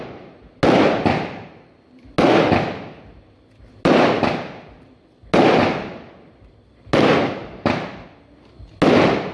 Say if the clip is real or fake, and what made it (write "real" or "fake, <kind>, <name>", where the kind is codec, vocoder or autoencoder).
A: real